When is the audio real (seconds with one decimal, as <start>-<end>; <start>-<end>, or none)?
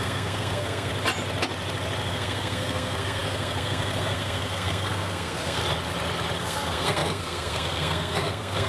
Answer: 0.9-2.1; 5.6-6.4